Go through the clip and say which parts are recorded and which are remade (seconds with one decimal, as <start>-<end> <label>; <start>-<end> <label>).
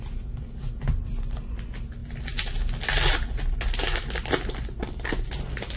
0.0-5.8 recorded